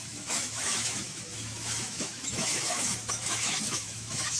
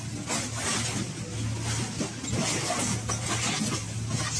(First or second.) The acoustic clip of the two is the second